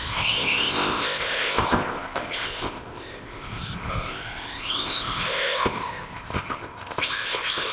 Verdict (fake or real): fake